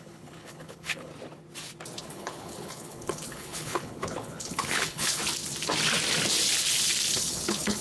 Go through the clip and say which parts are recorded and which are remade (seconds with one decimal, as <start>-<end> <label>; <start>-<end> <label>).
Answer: 0.0-1.1 remade; 1.1-2.0 recorded; 2.0-5.2 remade; 5.2-7.1 recorded; 7.1-7.8 remade